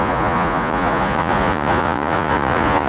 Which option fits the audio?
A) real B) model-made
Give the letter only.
B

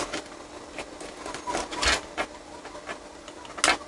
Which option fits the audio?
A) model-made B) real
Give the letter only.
B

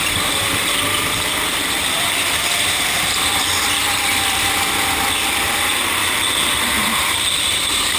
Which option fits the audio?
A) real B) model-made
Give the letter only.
B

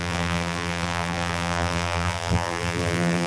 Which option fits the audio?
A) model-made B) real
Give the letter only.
A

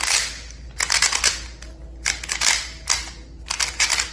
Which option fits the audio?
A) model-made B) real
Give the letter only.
B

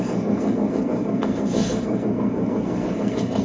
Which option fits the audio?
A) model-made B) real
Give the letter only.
A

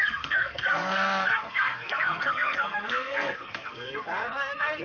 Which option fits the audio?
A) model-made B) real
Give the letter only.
A